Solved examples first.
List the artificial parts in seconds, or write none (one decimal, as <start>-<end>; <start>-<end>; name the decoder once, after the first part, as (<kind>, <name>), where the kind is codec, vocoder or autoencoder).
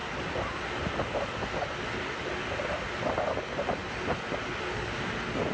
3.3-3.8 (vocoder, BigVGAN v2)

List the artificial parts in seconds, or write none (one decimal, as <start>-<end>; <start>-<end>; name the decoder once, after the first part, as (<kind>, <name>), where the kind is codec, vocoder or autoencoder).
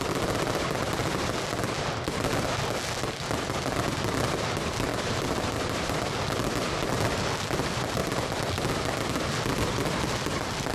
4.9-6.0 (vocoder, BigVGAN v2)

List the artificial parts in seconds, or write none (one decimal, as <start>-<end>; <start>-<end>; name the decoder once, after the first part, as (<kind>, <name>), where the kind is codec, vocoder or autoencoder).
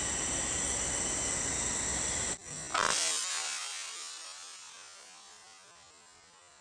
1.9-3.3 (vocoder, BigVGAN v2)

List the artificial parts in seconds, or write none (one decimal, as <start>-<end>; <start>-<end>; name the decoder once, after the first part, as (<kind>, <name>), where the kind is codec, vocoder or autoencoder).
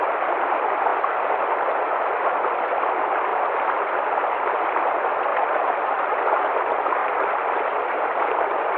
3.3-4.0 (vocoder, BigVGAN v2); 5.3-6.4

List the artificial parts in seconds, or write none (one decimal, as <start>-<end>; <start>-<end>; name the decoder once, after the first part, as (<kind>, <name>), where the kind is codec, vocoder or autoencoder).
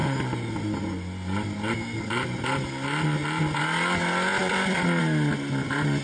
4.3-5.0 (vocoder, BigVGAN v2)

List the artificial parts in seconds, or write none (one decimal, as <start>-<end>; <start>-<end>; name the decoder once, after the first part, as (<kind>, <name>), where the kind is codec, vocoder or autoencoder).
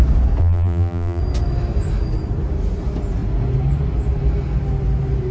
0.4-1.2 (vocoder, BigVGAN v2)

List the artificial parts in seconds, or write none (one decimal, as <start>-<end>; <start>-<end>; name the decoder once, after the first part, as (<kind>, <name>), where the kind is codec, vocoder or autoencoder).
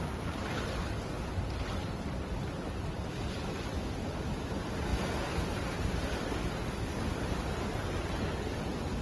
1.8-3.5 (vocoder, BigVGAN v2)